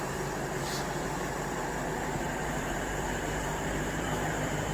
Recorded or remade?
remade